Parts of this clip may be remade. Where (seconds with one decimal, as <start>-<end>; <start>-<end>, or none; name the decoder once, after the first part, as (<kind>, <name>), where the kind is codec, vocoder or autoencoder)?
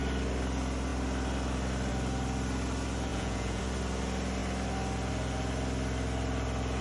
3.1-3.6 (vocoder, Vocos)